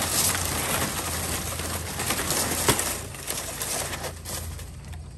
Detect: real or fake real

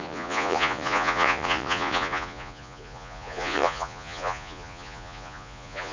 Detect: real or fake fake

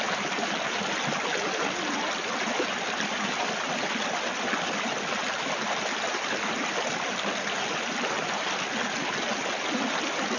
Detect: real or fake real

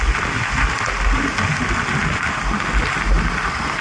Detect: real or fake real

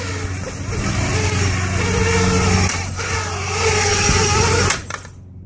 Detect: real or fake real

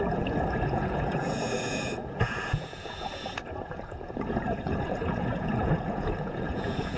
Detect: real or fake fake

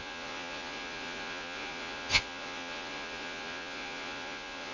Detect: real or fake fake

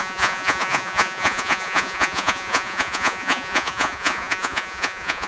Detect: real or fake fake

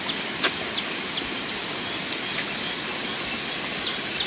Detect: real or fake real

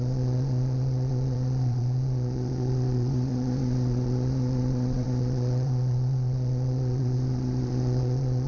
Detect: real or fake fake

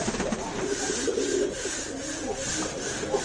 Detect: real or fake real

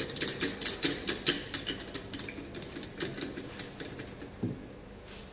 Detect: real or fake real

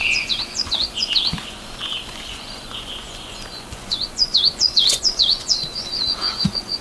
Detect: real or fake fake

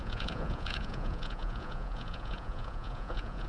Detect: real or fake fake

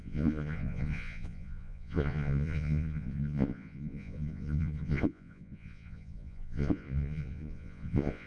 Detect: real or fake fake